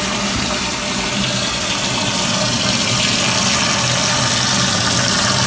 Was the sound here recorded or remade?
recorded